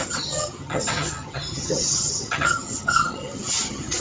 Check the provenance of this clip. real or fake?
fake